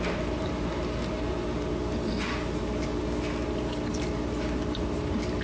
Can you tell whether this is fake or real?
real